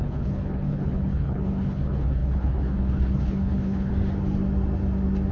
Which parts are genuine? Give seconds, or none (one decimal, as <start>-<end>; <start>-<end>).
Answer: 3.9-5.3